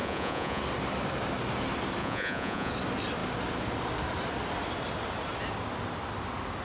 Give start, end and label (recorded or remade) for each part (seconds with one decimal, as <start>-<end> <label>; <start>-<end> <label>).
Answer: 0.0-0.6 remade; 0.6-2.0 recorded; 2.0-2.7 remade; 2.7-6.6 recorded